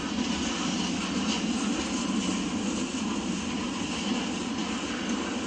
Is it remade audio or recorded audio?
recorded